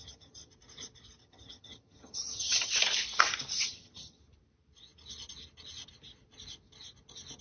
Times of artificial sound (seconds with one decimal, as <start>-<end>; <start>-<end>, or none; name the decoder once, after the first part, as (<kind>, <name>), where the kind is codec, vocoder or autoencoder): 0.0-0.5 (vocoder, HiFi-GAN); 1.2-2.7; 3.7-4.2